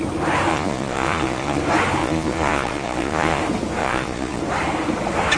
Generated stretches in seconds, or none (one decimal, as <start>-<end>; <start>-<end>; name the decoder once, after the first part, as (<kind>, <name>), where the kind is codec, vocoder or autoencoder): 0.5-1.6 (vocoder, Vocos); 2.0-3.4; 3.8-4.4